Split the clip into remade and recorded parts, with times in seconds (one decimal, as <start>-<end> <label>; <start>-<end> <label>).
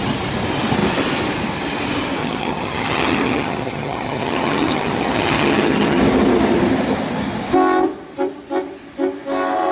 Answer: 0.0-2.2 recorded; 2.2-6.0 remade; 6.0-9.7 recorded